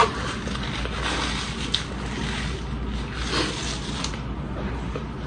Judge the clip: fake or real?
real